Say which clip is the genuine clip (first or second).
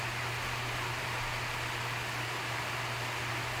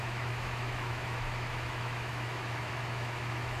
first